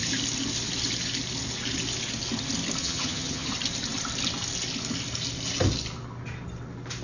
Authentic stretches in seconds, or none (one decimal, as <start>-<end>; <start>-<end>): 0.0-2.8; 3.5-7.0